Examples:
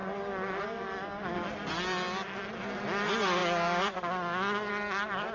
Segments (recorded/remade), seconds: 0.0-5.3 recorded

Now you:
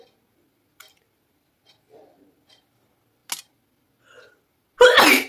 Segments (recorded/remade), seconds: 0.0-5.3 recorded

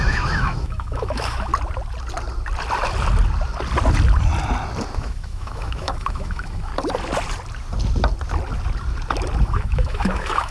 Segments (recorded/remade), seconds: 0.0-1.5 remade; 1.5-5.0 recorded; 5.0-6.7 remade; 6.7-9.4 recorded; 9.4-10.5 remade

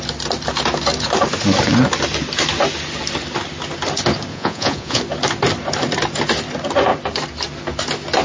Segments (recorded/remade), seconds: 0.0-4.3 recorded; 4.3-5.0 remade; 5.0-8.2 recorded

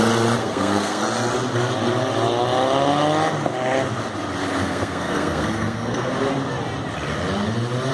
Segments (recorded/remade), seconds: 0.0-0.4 recorded; 0.4-1.0 remade; 1.0-4.6 recorded; 4.6-6.1 remade; 6.1-7.9 recorded

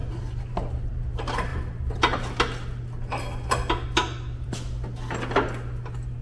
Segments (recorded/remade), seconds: 0.0-4.0 recorded; 4.0-4.5 remade; 4.5-6.2 recorded

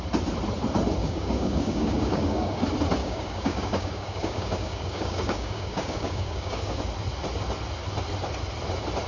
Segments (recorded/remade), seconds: 0.0-1.0 recorded; 1.0-2.6 remade; 2.6-3.0 recorded; 3.0-6.8 remade; 6.8-9.1 recorded

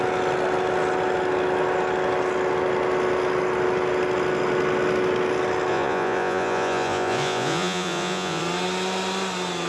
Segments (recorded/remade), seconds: 0.0-5.7 recorded; 5.7-8.4 remade; 8.4-9.7 recorded